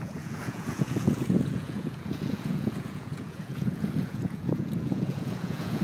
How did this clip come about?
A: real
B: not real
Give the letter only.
B